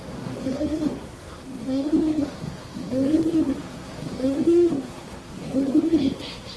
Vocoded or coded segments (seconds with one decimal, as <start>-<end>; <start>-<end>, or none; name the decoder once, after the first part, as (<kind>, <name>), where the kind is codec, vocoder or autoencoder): 0.0-6.6 (codec, SNAC)